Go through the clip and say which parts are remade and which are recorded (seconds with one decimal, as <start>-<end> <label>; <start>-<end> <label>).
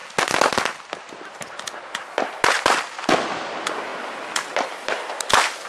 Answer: 0.0-5.7 recorded